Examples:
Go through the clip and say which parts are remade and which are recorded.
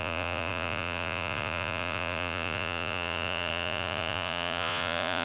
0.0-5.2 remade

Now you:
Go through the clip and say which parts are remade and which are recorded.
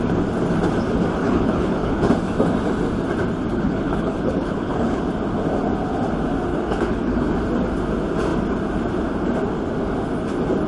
0.0-1.2 recorded; 1.2-2.1 remade; 2.1-3.5 recorded; 3.5-5.0 remade; 5.0-6.5 recorded; 6.5-7.3 remade; 7.3-10.7 recorded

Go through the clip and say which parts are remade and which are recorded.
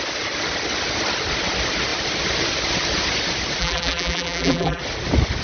0.0-3.6 recorded; 3.6-4.8 remade; 4.8-5.4 recorded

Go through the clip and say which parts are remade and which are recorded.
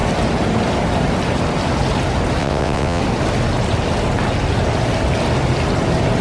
0.0-2.4 recorded; 2.4-3.0 remade; 3.0-6.2 recorded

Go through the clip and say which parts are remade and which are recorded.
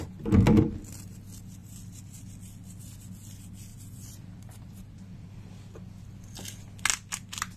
0.0-1.6 recorded; 1.6-2.2 remade; 2.2-3.7 recorded; 3.7-5.4 remade; 5.4-7.6 recorded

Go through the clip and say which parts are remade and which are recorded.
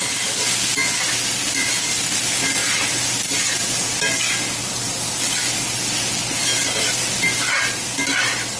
0.0-8.6 recorded